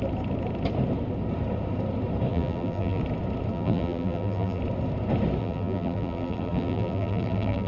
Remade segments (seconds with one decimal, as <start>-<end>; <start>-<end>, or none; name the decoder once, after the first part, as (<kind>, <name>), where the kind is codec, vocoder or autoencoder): 2.3-3.0 (vocoder, BigVGAN v2); 3.5-4.6; 5.4-7.7